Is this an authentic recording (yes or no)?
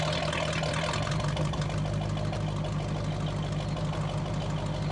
yes